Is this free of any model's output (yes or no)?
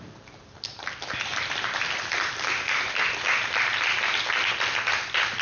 yes